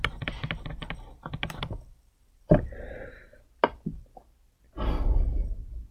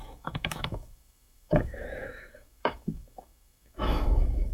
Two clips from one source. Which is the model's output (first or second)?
second